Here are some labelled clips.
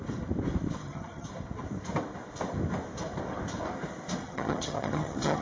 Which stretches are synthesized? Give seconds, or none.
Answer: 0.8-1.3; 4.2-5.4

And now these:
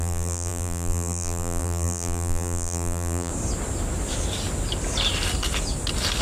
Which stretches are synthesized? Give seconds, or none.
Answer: 0.0-3.3

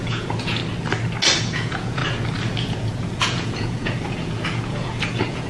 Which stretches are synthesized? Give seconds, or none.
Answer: 0.0-0.6; 1.4-2.0; 2.6-5.5